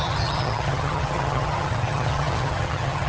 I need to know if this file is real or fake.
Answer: fake